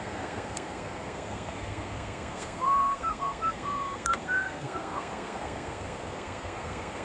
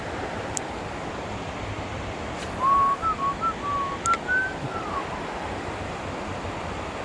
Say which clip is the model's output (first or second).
first